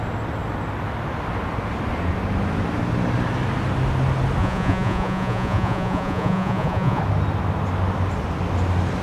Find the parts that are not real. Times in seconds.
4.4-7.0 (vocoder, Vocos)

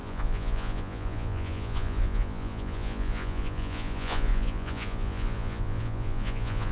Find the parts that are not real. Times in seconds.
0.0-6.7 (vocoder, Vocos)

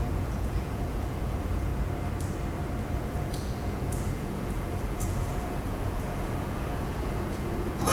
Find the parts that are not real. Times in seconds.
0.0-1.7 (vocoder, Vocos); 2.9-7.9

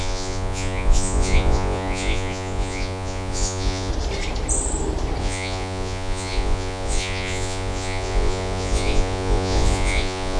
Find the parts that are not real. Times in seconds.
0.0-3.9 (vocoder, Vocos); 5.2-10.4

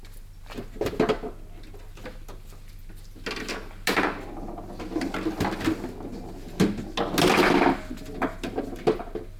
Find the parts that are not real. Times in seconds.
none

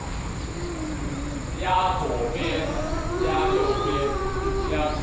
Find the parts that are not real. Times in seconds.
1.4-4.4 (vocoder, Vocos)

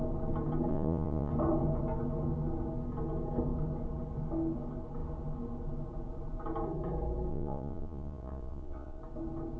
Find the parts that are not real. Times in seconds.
0.7-1.3 (vocoder, Vocos); 7.3-9.0

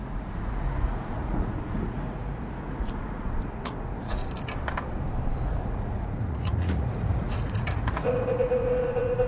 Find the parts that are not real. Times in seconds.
0.0-4.2 (vocoder, Vocos); 5.4-9.3